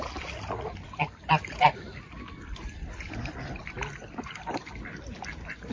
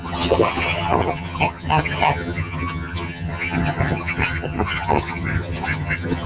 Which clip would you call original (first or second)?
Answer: first